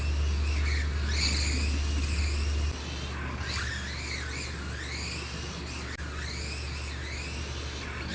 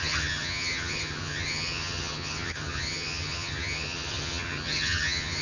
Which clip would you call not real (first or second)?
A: second